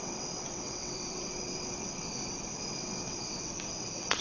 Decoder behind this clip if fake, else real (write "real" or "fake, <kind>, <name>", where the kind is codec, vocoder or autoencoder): fake, vocoder, WaveNeXt